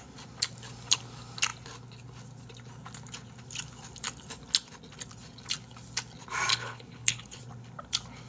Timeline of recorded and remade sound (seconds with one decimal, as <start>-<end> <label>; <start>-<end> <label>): 0.0-6.5 recorded; 6.5-7.4 remade; 7.4-8.3 recorded